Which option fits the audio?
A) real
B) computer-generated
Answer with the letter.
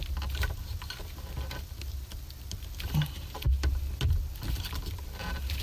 A